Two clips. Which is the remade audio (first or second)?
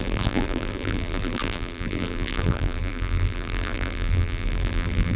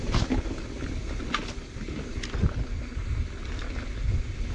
first